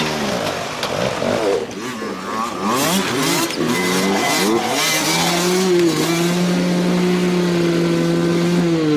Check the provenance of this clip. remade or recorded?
recorded